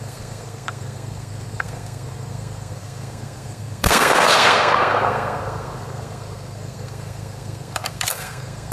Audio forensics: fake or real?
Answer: fake